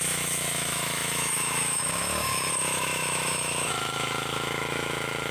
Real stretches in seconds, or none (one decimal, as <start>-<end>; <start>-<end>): none